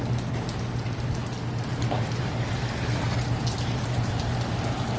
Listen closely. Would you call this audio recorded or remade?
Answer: recorded